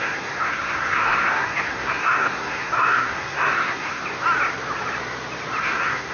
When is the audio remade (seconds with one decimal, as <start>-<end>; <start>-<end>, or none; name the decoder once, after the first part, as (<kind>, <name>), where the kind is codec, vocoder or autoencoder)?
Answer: 0.0-4.0 (codec, SNAC); 5.6-6.1